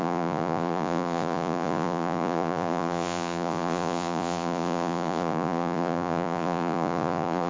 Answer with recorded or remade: remade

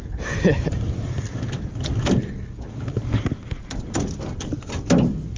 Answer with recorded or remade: recorded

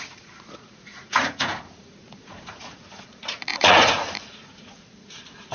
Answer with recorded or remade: remade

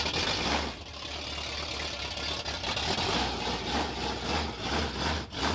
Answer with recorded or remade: recorded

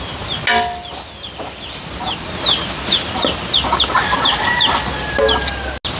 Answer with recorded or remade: recorded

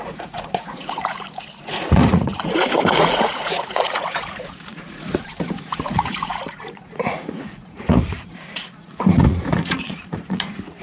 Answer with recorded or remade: remade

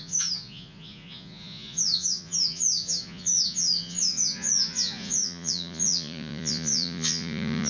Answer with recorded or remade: remade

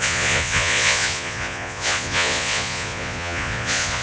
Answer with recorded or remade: remade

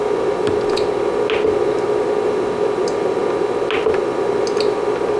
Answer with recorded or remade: recorded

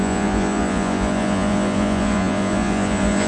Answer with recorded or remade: remade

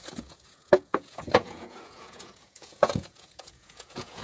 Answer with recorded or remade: remade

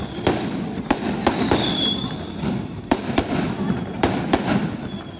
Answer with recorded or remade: recorded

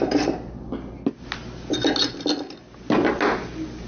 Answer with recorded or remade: recorded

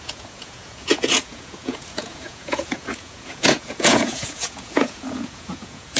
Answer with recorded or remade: remade